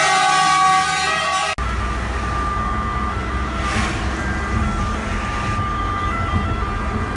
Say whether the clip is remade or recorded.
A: recorded